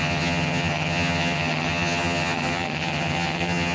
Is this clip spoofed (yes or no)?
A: yes